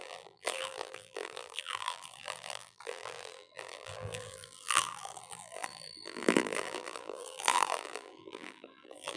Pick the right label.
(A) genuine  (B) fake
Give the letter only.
B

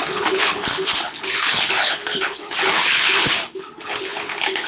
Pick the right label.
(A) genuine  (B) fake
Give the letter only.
B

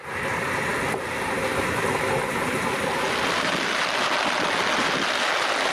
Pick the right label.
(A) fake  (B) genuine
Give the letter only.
B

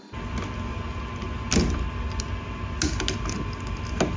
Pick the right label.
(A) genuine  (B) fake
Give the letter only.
A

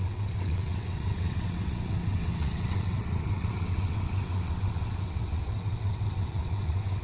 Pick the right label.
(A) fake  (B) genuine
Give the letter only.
A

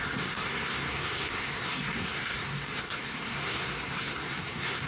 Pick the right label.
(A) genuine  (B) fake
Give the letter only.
B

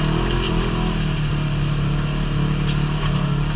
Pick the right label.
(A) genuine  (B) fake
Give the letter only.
A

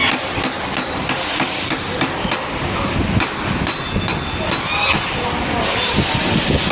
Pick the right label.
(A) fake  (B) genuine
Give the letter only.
B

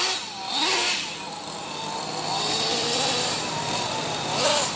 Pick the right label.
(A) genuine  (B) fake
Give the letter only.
A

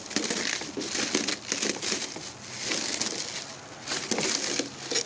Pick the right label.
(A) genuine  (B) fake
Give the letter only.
A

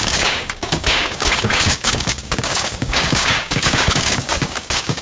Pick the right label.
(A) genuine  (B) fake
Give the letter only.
B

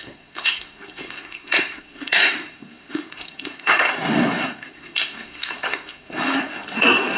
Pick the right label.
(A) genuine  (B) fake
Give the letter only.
B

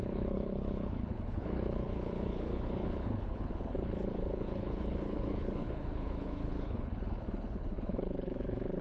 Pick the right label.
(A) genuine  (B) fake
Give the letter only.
B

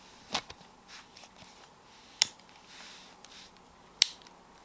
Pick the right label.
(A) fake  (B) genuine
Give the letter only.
B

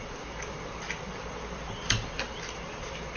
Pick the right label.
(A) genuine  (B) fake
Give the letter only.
A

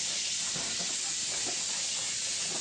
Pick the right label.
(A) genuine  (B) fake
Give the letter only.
A